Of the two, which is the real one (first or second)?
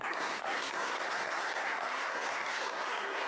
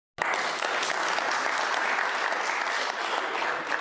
second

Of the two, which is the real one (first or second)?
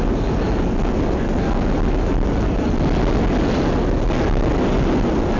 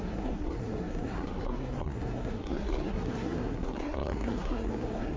first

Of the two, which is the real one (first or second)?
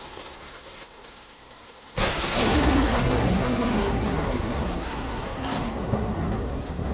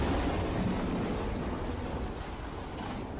second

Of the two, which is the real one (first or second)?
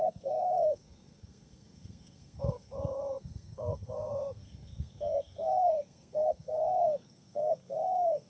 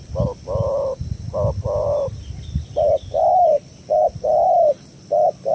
second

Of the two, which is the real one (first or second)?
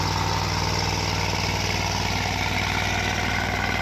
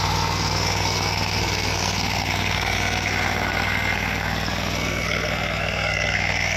first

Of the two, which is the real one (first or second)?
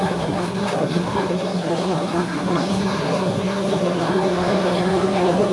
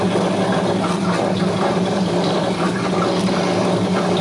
second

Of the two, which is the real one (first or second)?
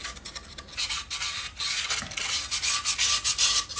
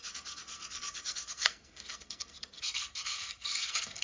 first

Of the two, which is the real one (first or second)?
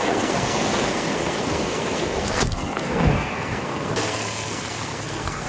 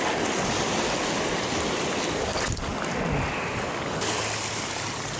second